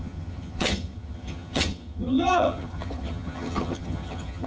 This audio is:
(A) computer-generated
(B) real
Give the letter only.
A